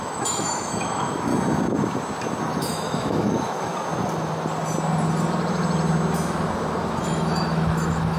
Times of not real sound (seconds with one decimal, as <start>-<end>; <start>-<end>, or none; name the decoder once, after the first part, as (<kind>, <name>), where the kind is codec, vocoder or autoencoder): 0.0-1.3 (autoencoder, DAC-VAE); 2.4-3.7; 7.0-8.2